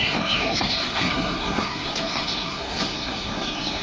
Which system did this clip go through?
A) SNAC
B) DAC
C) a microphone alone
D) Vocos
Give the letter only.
A